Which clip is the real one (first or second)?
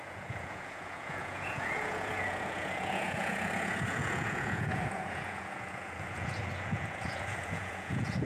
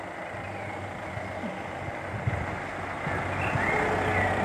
second